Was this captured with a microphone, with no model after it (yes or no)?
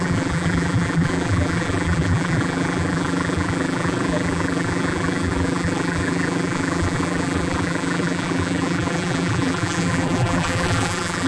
no